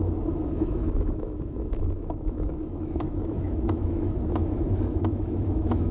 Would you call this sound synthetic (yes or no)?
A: yes